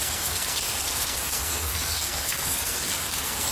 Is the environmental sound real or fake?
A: fake